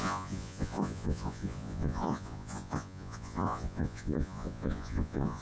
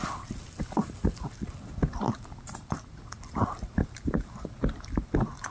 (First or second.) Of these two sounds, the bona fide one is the second